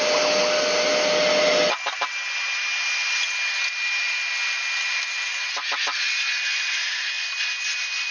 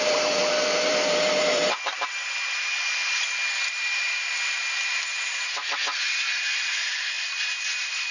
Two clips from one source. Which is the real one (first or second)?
first